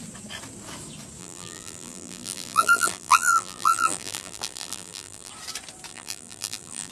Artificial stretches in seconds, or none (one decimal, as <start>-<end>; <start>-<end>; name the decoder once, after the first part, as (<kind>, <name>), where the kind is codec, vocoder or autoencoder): 1.2-5.3 (vocoder, BigVGAN v2); 5.9-6.9